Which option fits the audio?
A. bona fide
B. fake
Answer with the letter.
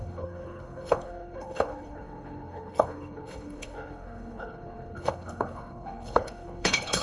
B